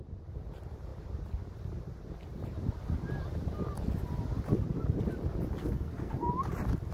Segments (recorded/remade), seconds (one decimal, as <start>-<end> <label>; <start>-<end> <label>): 0.0-5.6 recorded; 5.6-6.3 remade; 6.3-6.9 recorded